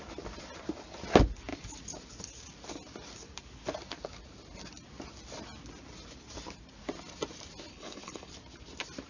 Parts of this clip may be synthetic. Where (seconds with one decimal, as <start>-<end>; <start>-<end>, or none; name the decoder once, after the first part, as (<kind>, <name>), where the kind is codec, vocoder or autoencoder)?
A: 7.7-8.3 (codec, HILCodec)